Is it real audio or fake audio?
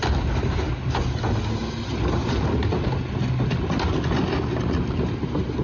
real